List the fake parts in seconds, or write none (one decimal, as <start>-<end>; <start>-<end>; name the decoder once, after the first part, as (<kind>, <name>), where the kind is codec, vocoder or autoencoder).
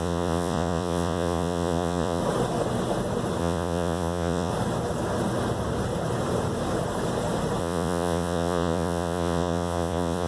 0.0-2.2 (vocoder, Vocos); 3.4-4.5; 7.6-10.3